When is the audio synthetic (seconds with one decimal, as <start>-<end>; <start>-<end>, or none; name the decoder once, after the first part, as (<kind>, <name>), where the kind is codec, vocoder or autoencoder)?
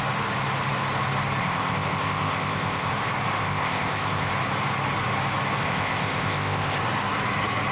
1.4-2.9 (codec, ZipCodec); 3.4-4.3; 5.6-6.8